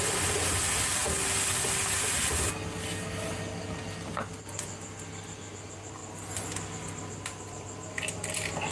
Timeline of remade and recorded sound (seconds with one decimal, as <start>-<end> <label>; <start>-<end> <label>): 0.0-8.7 recorded